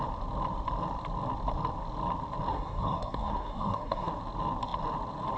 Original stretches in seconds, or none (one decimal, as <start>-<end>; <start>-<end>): 0.0-2.5; 4.1-5.4